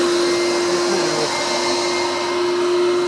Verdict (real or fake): real